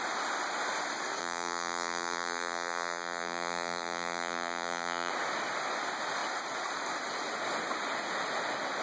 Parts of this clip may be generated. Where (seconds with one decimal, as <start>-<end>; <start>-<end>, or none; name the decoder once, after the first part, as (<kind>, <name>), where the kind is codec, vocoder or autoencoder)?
1.2-5.1 (vocoder, BigVGAN v2)